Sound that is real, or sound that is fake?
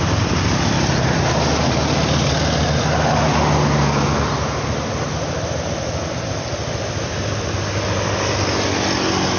real